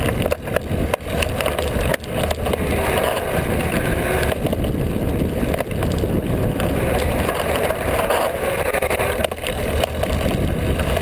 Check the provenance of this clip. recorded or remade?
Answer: recorded